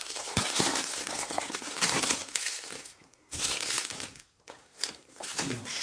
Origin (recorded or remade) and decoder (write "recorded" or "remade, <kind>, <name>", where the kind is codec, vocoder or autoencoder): remade, codec, SNAC